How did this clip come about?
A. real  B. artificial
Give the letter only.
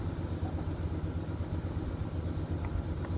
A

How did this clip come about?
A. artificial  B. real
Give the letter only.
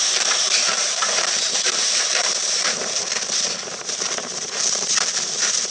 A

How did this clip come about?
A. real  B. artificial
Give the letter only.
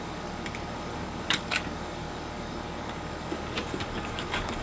B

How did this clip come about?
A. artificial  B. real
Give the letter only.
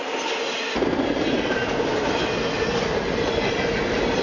B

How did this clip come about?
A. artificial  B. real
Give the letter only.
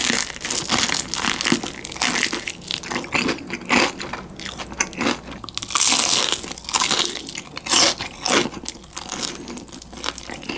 B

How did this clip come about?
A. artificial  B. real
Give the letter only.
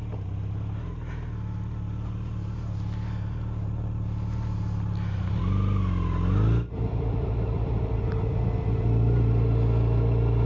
B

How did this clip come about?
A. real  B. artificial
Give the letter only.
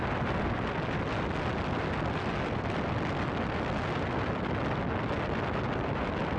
A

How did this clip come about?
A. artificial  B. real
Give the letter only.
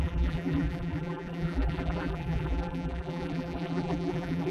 A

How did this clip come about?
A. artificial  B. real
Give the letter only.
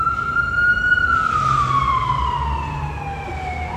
B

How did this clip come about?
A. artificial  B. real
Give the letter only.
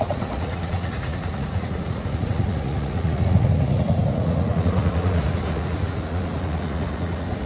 A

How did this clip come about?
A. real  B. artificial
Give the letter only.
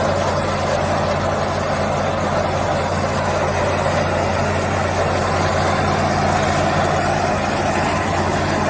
A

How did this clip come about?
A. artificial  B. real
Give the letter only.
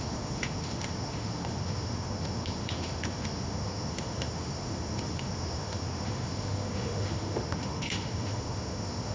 A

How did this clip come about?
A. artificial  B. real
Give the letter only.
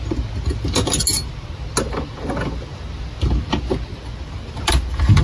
B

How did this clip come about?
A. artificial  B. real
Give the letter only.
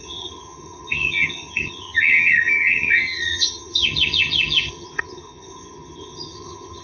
A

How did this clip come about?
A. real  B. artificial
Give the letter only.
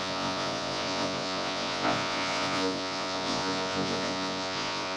B